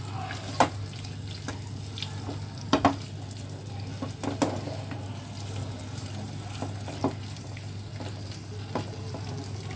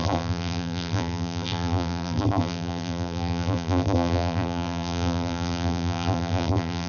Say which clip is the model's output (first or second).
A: second